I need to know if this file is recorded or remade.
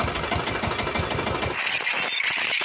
recorded